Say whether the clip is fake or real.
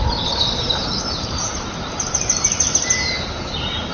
real